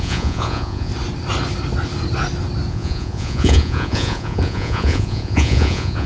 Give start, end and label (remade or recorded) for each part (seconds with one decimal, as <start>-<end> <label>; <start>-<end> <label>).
0.0-0.9 remade; 0.9-2.7 recorded; 2.7-6.1 remade